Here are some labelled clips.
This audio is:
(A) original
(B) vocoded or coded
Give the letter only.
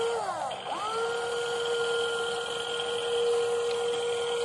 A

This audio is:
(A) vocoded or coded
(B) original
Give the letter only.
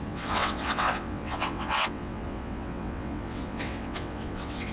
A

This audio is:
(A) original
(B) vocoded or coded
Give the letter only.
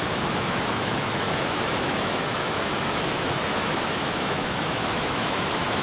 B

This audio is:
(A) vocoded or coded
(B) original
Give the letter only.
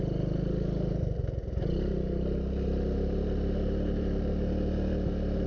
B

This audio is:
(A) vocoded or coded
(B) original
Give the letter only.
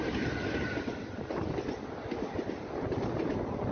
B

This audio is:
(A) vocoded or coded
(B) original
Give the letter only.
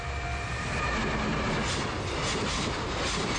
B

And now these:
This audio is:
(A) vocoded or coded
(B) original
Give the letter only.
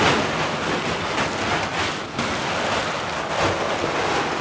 B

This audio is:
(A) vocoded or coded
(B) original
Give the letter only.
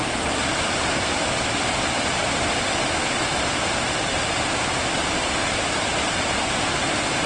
B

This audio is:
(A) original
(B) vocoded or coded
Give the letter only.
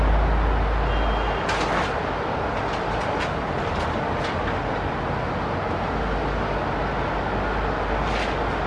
A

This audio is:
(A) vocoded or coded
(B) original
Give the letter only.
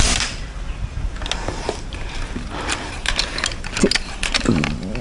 B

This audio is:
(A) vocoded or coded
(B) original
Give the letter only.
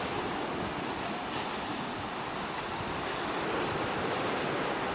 B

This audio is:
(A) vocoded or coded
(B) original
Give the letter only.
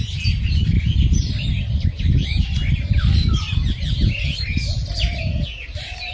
B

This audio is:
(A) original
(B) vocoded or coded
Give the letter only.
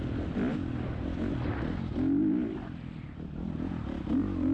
A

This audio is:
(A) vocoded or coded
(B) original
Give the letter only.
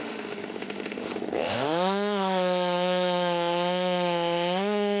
A